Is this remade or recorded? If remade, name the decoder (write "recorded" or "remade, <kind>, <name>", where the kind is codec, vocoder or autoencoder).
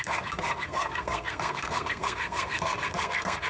remade, codec, SNAC